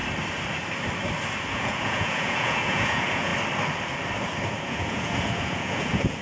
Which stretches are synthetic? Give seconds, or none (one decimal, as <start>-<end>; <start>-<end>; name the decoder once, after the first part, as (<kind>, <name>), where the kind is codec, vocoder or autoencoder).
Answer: 1.5-3.3 (vocoder, Vocos); 4.6-6.2